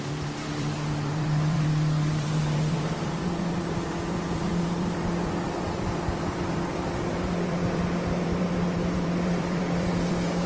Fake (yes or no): yes